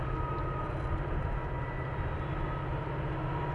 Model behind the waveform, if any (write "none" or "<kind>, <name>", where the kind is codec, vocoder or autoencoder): none